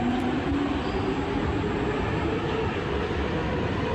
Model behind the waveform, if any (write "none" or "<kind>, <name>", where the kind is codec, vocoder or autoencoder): none